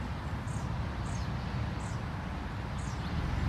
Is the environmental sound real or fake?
real